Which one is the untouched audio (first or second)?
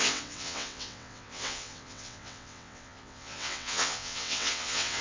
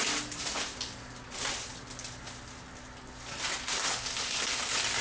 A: second